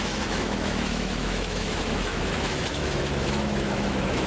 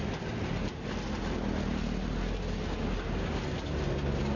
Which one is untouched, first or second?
second